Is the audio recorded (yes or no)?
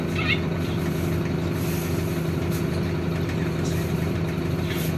yes